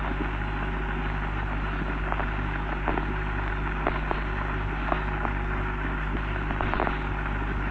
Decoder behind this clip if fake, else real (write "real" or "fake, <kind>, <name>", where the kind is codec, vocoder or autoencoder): real